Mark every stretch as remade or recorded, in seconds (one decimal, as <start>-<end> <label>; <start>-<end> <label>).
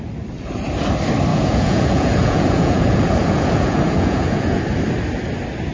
0.0-1.3 recorded; 1.3-4.6 remade; 4.6-5.7 recorded